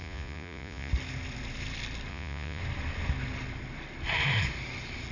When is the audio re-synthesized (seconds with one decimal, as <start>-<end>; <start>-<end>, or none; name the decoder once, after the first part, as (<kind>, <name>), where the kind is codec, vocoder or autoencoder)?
0.0-0.9 (vocoder, Vocos); 2.1-2.6